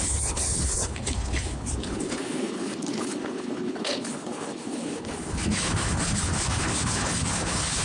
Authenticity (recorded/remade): remade